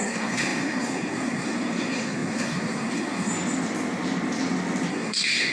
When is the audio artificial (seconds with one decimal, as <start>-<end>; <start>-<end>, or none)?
0.0-3.3; 4.9-5.5